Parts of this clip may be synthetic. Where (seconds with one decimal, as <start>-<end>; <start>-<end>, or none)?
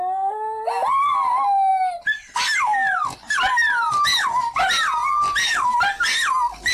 none